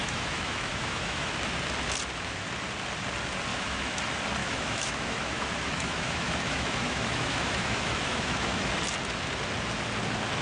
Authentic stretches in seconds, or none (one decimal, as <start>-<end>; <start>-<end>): 1.3-3.5; 4.0-4.4; 8.7-10.4